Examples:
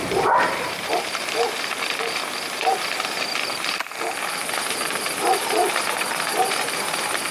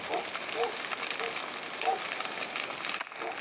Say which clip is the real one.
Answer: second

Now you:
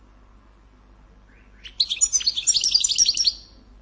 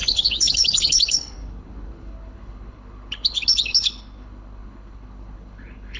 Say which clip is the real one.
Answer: first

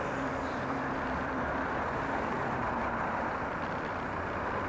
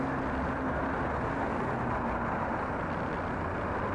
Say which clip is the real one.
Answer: second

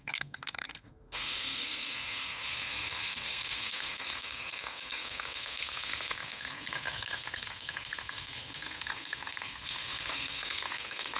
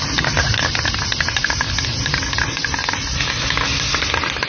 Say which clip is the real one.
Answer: second